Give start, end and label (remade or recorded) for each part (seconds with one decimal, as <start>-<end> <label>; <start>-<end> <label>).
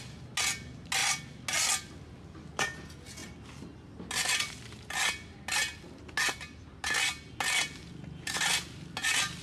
0.0-9.4 recorded